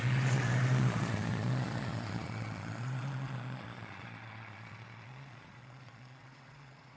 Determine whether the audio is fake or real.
fake